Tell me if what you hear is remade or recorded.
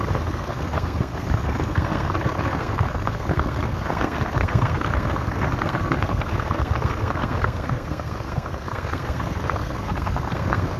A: remade